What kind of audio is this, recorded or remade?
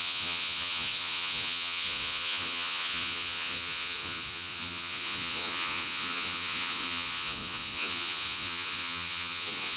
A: remade